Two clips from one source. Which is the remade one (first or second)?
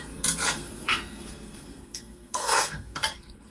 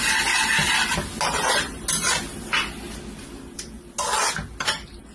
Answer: first